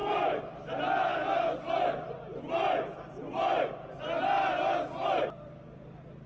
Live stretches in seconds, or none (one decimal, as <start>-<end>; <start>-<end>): 0.7-6.3